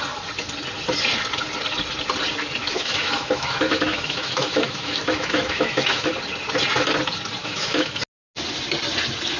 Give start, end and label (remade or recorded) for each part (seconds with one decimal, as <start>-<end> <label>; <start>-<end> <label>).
0.0-2.6 recorded; 2.6-6.1 remade; 6.1-7.4 recorded; 7.4-8.0 remade; 8.0-9.4 recorded